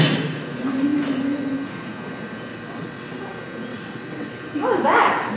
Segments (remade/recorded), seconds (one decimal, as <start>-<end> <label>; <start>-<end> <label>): 0.0-2.5 recorded; 2.5-3.2 remade; 3.2-3.7 recorded; 3.7-4.3 remade; 4.3-5.4 recorded